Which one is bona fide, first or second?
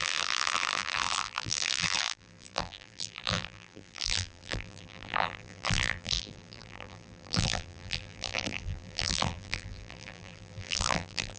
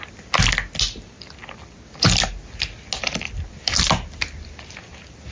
second